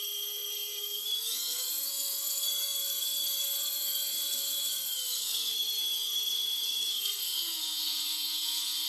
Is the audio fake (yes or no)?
yes